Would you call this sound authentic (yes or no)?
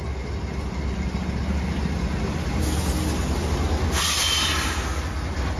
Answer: yes